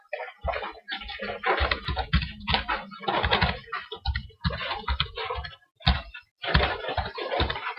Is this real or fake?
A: real